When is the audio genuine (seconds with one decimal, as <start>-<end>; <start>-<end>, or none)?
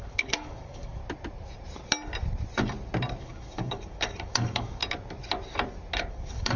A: 1.0-3.2; 4.8-6.1